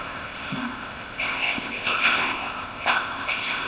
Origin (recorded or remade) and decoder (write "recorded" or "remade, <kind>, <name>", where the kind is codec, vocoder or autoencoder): remade, codec, ZipCodec